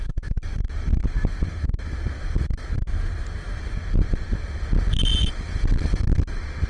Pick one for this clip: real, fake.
real